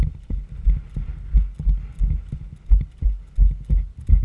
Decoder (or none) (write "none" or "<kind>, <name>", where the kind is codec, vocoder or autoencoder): none